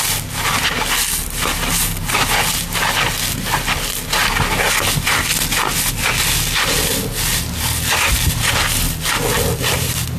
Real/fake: real